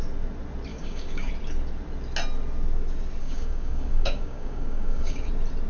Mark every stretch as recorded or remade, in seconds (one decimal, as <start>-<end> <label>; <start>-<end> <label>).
0.0-0.7 recorded; 0.7-1.3 remade; 1.3-3.2 recorded; 3.2-5.3 remade; 5.3-5.7 recorded